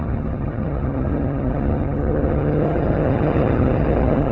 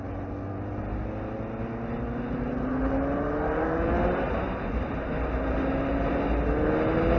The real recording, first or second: second